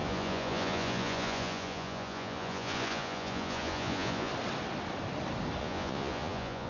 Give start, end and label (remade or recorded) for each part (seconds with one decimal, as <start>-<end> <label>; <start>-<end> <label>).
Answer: 0.0-4.3 remade; 4.3-5.6 recorded; 5.6-6.7 remade